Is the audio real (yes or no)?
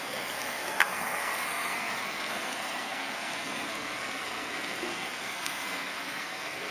no